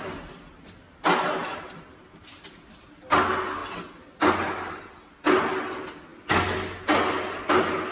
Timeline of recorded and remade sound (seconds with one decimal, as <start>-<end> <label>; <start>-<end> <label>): 0.0-7.9 recorded